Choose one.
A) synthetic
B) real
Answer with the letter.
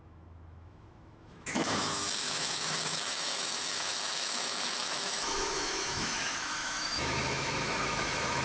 A